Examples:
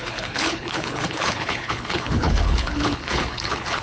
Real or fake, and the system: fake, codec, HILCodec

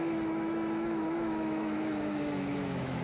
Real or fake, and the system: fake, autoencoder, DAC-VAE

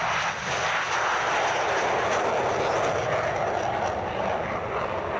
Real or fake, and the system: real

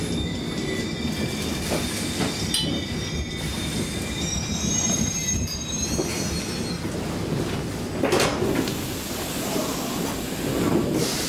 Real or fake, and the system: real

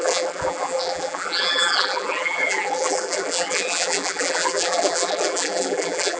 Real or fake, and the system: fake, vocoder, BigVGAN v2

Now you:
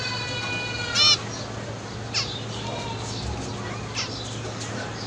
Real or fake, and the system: real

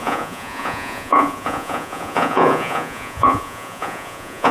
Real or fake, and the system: fake, vocoder, Vocos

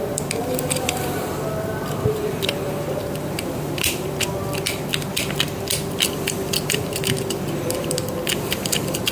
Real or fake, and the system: fake, vocoder, BigVGAN v2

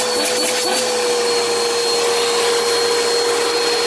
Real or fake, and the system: real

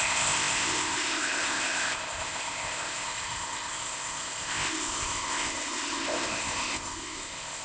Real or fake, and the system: fake, codec, ZipCodec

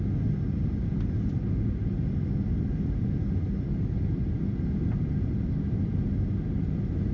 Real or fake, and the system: real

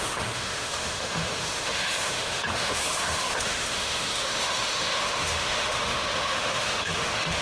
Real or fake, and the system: fake, autoencoder, DAC-VAE